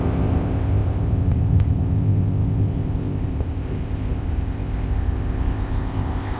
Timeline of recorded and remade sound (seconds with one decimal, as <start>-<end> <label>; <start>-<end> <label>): 0.0-6.4 remade